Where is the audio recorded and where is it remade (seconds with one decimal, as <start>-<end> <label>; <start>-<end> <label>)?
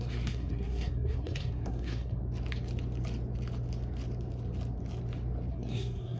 0.0-2.2 remade; 2.2-5.5 recorded; 5.5-6.2 remade